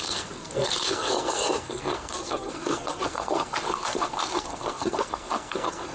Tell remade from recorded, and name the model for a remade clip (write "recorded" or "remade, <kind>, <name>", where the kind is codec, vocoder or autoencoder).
remade, codec, SNAC